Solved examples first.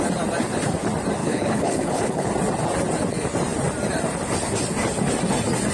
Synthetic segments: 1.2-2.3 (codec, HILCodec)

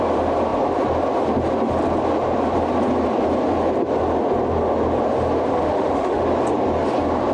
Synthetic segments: 5.5-6.2 (autoencoder, DAC-VAE)

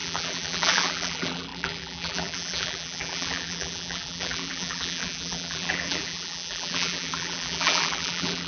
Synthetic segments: 0.0-8.5 (vocoder, BigVGAN v2)

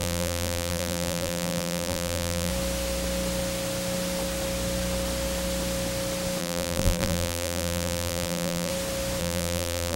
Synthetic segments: 0.0-2.5 (vocoder, BigVGAN v2); 6.4-8.7; 9.2-10.0

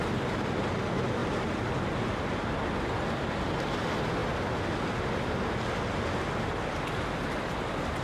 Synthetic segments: none

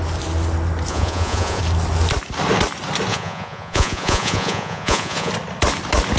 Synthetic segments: 0.9-1.6 (vocoder, Vocos); 3.1-5.3

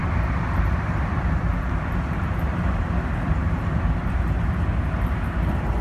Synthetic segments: 0.0-5.8 (vocoder, BigVGAN v2)

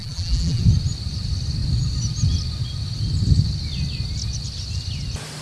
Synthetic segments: 0.0-0.6 (vocoder, BigVGAN v2)